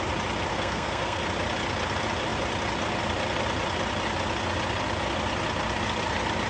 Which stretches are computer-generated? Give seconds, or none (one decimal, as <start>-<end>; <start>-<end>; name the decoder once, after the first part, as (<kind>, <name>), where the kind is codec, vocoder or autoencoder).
0.5-1.2 (codec, SNAC)